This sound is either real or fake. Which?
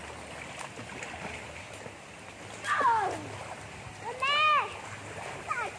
real